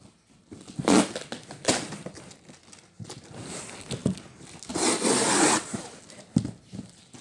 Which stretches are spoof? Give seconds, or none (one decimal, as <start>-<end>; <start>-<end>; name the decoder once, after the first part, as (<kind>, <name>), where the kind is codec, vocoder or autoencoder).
none